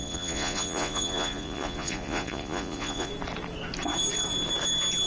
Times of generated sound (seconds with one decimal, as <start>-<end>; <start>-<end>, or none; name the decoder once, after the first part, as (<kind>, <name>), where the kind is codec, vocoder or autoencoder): 0.0-3.1 (vocoder, Vocos)